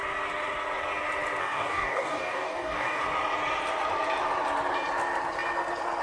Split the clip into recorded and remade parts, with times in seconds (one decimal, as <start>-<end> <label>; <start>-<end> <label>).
0.0-1.4 recorded; 1.4-3.0 remade; 3.0-6.0 recorded